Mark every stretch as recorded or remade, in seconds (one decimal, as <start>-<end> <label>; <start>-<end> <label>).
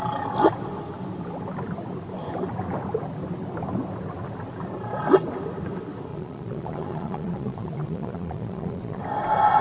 0.0-6.1 recorded; 6.1-9.0 remade; 9.0-9.6 recorded